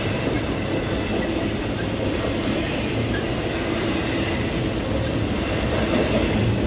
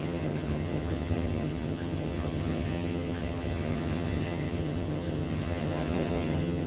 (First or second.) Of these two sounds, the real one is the first